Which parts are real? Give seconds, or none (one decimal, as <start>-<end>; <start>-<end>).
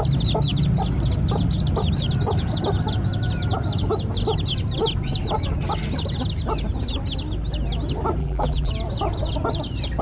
0.0-8.2; 8.7-10.0